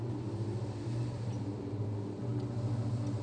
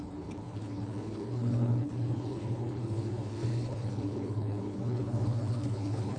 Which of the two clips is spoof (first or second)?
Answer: second